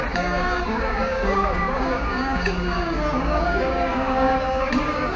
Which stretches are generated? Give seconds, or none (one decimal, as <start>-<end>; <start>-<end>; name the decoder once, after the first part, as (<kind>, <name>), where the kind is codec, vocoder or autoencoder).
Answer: 0.0-5.2 (codec, DAC)